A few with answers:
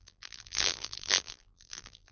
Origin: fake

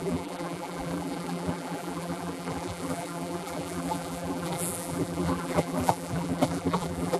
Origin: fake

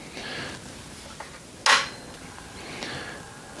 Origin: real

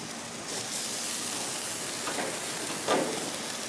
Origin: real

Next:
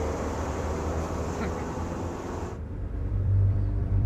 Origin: fake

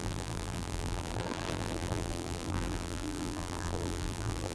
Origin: fake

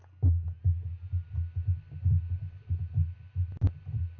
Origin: real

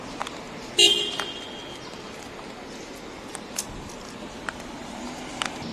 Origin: real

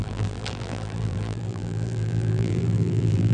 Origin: fake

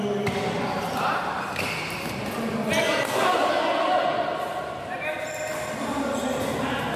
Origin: real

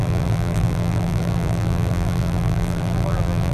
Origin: fake